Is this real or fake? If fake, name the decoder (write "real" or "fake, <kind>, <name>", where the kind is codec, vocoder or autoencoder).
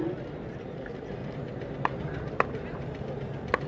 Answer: real